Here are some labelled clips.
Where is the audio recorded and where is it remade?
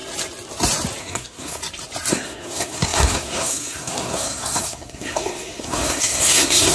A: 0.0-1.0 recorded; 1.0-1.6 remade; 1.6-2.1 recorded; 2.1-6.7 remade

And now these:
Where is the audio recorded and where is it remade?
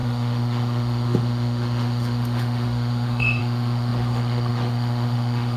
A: 0.0-5.6 remade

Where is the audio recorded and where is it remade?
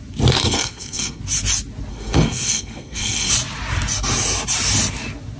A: 0.0-0.4 recorded; 0.4-1.2 remade; 1.2-1.9 recorded; 1.9-3.3 remade; 3.3-5.4 recorded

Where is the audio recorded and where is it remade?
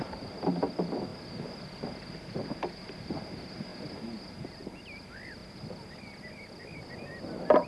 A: 0.0-1.1 remade; 1.1-2.1 recorded; 2.1-3.7 remade; 3.7-4.3 recorded; 4.3-5.4 remade; 5.4-6.8 recorded; 6.8-7.7 remade